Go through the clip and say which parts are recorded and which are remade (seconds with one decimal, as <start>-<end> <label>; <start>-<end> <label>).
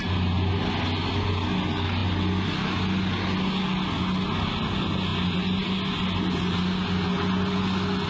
0.0-8.1 recorded